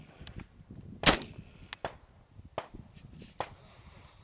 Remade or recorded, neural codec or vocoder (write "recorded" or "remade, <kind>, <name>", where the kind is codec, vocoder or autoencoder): recorded